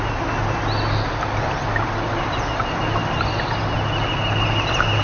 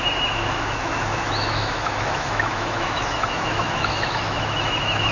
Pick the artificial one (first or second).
second